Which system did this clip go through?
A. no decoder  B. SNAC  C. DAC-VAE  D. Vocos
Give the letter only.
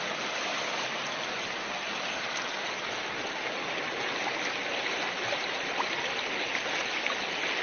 A